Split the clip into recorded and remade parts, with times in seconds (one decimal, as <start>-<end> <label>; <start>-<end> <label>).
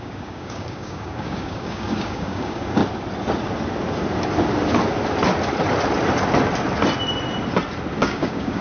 0.0-2.8 remade; 2.8-8.0 recorded; 8.0-8.6 remade